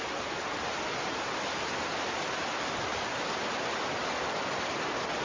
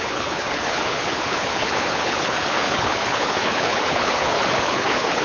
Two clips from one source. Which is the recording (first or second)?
first